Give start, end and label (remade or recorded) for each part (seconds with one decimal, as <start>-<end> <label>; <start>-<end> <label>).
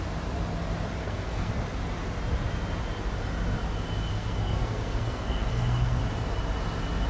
0.0-1.0 recorded; 1.0-1.5 remade; 1.5-4.1 recorded; 4.1-6.0 remade; 6.0-7.1 recorded